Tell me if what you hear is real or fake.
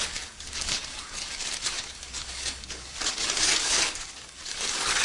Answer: fake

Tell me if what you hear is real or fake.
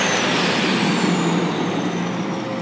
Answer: real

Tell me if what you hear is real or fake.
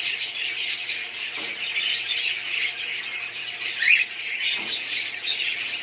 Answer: fake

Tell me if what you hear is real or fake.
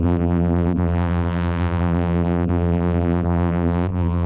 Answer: fake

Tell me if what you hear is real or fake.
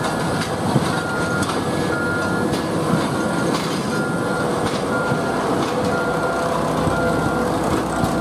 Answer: real